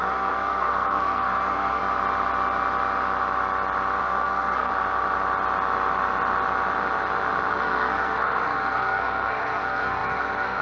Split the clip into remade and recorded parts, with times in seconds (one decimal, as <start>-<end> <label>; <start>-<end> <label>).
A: 0.0-1.8 remade; 1.8-4.0 recorded; 4.0-4.7 remade; 4.7-7.5 recorded; 7.5-10.6 remade